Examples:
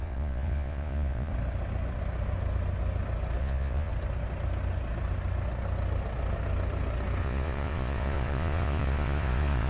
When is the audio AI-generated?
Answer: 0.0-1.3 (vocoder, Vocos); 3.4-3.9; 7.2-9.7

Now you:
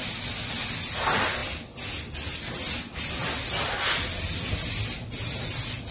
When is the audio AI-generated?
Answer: none

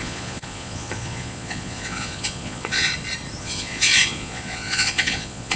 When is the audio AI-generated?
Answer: 0.0-2.9 (vocoder, Vocos); 3.4-5.6

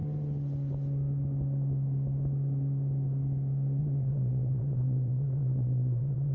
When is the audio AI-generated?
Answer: 3.8-6.3 (vocoder, Vocos)

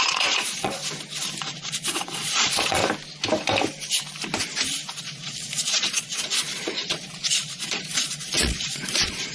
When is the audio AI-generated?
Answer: 0.0-0.8 (vocoder, Vocos); 1.4-2.8; 5.0-9.3